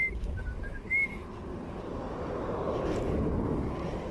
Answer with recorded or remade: recorded